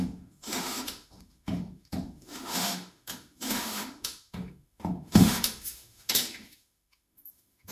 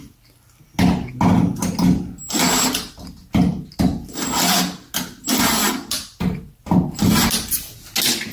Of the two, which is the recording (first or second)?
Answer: second